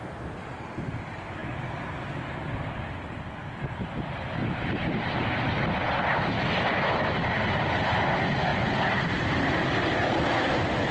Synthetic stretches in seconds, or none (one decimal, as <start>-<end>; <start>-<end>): none